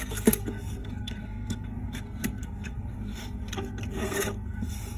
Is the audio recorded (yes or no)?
no